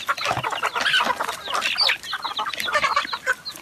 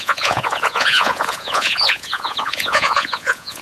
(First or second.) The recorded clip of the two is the first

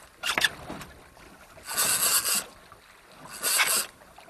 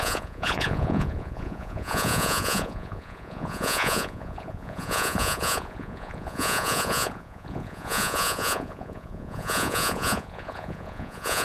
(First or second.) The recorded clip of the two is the first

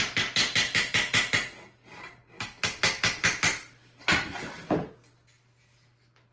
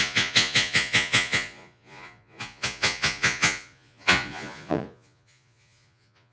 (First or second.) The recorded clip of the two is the first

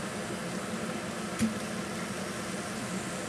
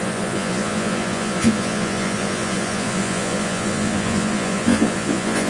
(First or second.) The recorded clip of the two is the first